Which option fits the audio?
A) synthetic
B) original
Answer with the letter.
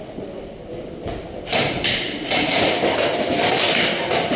B